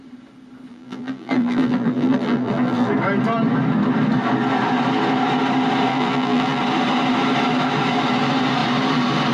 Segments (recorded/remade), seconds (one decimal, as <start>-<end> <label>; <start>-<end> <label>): 0.0-0.7 recorded; 0.7-2.9 remade; 2.9-5.9 recorded; 5.9-6.6 remade; 6.6-9.3 recorded